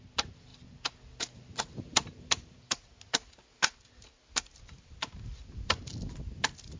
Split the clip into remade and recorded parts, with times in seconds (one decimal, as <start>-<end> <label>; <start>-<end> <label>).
0.0-6.8 recorded